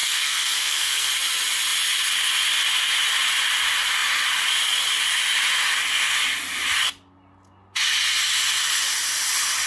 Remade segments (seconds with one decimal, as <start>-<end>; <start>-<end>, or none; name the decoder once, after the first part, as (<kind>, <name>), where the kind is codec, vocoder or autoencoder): 0.0-1.1 (codec, SNAC)